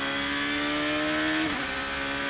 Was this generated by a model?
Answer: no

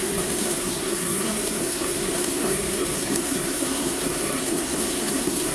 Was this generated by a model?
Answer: yes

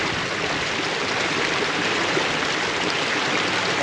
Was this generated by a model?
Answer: no